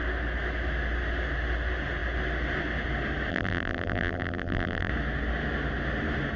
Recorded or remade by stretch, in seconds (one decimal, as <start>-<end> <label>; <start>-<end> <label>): 0.0-3.3 recorded; 3.3-4.9 remade; 4.9-6.4 recorded